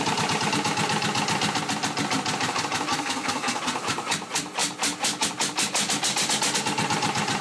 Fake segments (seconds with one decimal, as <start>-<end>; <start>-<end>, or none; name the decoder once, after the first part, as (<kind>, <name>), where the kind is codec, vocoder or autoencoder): 2.9-3.6 (codec, SNAC)

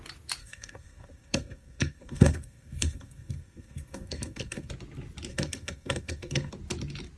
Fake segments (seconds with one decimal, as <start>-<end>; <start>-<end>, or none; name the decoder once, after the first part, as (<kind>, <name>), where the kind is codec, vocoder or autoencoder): 0.4-4.7 (codec, SNAC); 5.3-6.5

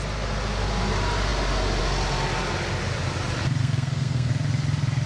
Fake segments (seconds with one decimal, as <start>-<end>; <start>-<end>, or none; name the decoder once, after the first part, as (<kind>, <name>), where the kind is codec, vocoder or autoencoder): 3.6-4.3 (codec, SNAC)

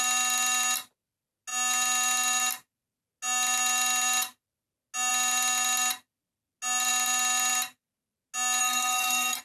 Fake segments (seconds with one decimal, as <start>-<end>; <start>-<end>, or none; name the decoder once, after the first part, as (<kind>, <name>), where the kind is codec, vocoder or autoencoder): 8.6-9.4 (codec, SNAC)

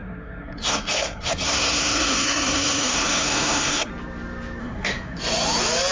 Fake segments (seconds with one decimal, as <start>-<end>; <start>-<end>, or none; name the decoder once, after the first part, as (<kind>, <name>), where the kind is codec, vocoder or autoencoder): 0.0-3.9 (codec, SNAC); 4.6-5.2

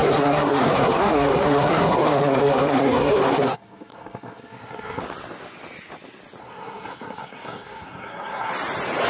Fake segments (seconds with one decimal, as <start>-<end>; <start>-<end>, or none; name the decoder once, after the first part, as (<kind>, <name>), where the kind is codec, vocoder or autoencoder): 0.0-5.0 (codec, SNAC); 6.4-8.5

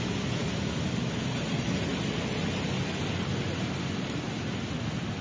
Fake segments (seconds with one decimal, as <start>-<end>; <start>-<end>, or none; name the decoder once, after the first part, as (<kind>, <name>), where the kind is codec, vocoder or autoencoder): none

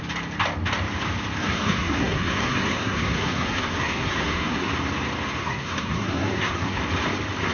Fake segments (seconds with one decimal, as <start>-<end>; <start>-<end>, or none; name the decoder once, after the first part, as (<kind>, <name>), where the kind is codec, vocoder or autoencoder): 1.4-4.7 (codec, SNAC); 5.4-6.8